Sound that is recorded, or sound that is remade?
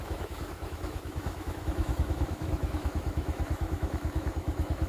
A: remade